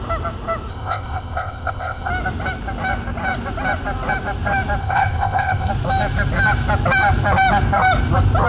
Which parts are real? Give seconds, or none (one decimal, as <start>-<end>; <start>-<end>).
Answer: 0.0-0.7; 2.1-4.8; 5.7-8.5